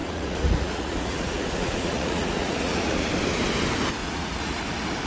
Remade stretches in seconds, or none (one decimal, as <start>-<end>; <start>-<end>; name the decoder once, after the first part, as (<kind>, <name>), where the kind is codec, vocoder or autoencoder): 0.0-3.1 (vocoder, Vocos); 4.0-4.6